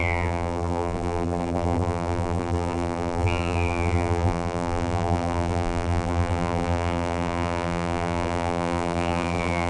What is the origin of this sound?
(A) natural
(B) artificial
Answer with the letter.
B